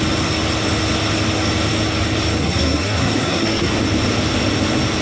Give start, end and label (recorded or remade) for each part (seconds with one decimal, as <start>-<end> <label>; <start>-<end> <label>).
0.0-2.4 recorded; 2.4-3.7 remade; 3.7-5.0 recorded